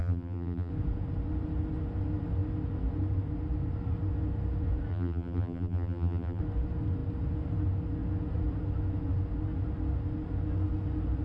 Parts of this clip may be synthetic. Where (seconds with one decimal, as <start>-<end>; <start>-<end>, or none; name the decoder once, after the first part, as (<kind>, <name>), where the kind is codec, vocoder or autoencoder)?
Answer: 0.0-0.7 (vocoder, BigVGAN v2); 4.9-6.4